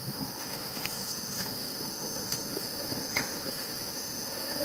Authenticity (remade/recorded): remade